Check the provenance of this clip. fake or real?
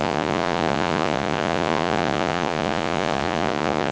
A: fake